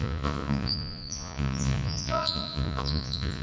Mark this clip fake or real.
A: fake